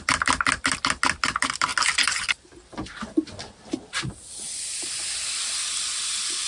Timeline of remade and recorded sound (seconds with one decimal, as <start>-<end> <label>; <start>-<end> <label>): 0.0-6.5 recorded